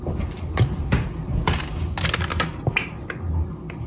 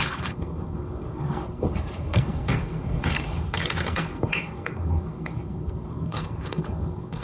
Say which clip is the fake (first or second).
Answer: second